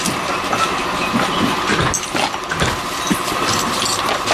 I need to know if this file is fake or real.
real